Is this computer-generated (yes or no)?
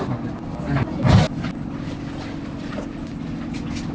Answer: no